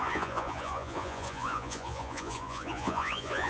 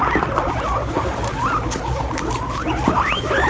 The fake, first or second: first